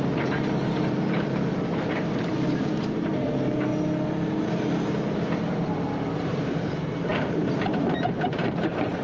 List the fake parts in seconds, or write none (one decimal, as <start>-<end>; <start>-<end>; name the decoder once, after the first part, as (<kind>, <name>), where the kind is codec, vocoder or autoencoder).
0.0-3.7 (vocoder, BigVGAN v2); 4.4-9.0